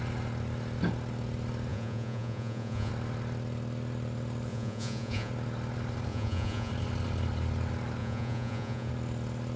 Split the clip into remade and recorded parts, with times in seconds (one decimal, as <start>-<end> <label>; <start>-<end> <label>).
0.0-1.7 recorded; 1.7-2.9 remade; 2.9-4.5 recorded; 4.5-5.3 remade; 5.3-6.1 recorded; 6.1-6.7 remade; 6.7-8.0 recorded; 8.0-8.9 remade; 8.9-9.6 recorded